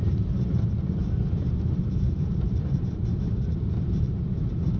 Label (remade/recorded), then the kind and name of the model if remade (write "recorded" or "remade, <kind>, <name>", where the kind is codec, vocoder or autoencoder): remade, vocoder, BigVGAN v2